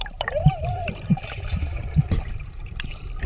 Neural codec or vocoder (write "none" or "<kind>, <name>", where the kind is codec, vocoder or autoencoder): vocoder, BigVGAN v2